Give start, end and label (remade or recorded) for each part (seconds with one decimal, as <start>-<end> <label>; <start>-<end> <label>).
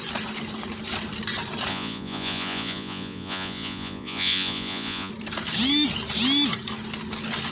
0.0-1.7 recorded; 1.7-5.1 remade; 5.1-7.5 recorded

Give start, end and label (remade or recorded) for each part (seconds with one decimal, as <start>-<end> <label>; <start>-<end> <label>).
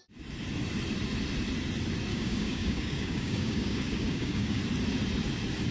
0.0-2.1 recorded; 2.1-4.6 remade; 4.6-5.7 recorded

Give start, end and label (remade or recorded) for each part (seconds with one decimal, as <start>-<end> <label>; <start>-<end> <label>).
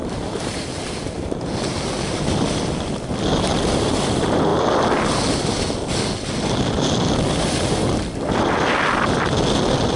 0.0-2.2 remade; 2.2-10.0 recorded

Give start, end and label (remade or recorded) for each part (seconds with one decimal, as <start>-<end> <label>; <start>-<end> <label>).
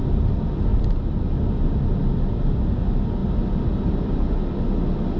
0.0-5.2 recorded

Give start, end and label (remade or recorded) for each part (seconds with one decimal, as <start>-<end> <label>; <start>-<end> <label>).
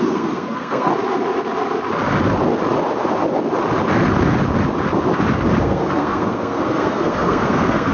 0.0-0.9 remade; 0.9-5.6 recorded; 5.6-7.9 remade